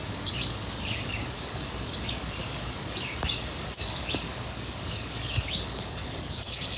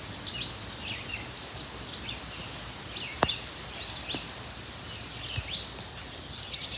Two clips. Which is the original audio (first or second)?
second